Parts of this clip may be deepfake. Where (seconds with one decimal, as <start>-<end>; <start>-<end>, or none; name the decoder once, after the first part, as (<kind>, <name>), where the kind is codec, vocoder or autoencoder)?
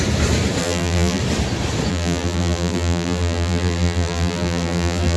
0.6-1.2 (vocoder, BigVGAN v2); 1.9-5.2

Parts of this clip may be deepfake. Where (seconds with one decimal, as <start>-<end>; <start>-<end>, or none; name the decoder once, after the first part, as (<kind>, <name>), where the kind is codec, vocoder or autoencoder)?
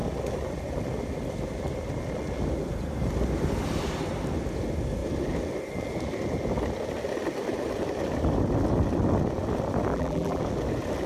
9.9-10.4 (vocoder, BigVGAN v2)